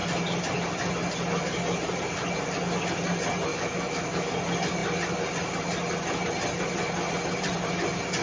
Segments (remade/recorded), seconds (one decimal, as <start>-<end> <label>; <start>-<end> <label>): 0.0-3.5 recorded; 3.5-4.3 remade; 4.3-8.2 recorded